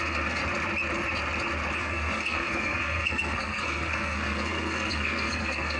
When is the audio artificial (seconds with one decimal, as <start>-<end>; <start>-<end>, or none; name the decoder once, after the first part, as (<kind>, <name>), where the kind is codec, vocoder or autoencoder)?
0.0-0.4 (codec, SNAC); 1.8-5.8